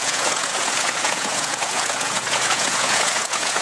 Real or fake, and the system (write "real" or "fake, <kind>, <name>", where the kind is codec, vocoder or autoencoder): fake, vocoder, Vocos